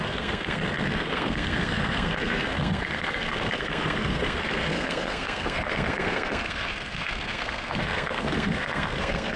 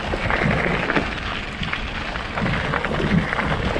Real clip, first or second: second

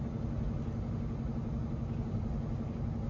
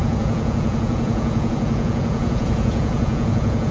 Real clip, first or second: first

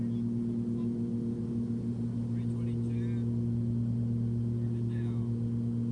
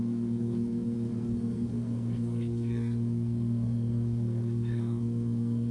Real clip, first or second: first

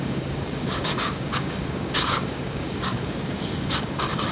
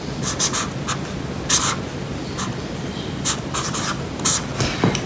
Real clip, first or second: second